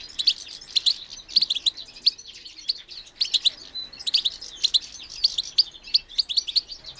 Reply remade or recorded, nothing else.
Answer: recorded